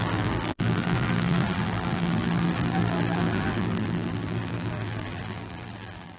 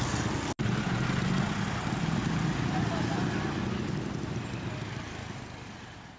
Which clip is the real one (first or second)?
second